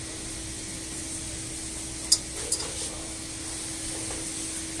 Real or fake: real